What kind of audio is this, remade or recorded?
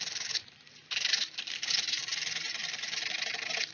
remade